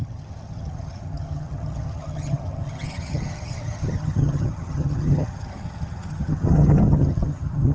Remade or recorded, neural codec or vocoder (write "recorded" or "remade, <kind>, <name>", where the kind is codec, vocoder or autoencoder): remade, vocoder, HiFi-GAN